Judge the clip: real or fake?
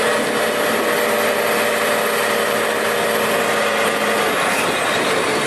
real